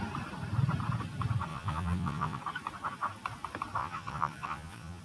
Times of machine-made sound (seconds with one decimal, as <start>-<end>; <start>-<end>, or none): 1.5-2.4; 3.8-5.0